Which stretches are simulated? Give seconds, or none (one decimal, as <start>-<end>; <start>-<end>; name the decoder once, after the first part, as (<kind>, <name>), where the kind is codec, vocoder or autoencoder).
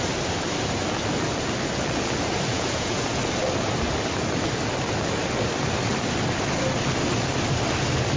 2.5-3.2 (vocoder, Vocos)